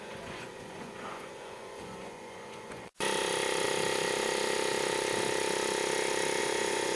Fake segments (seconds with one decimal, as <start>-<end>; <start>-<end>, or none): 0.0-2.9; 6.4-7.0

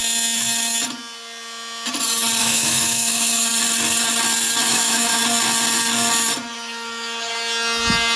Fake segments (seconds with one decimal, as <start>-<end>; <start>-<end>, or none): 2.4-3.5; 4.7-5.2

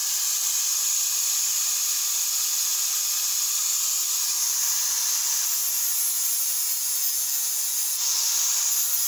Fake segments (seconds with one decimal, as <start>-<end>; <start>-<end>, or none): none

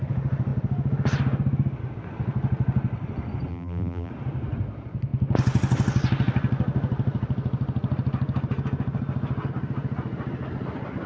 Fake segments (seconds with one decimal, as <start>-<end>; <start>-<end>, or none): 3.5-4.1